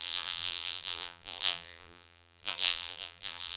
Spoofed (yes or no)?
yes